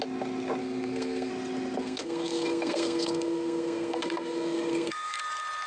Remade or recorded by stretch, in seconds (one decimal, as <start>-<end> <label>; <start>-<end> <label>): 0.0-0.6 recorded; 0.6-1.3 remade; 1.3-1.8 recorded; 1.8-5.2 remade; 5.2-5.7 recorded